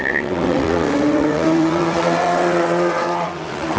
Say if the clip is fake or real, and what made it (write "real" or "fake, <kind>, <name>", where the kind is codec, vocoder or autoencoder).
fake, vocoder, WaveNeXt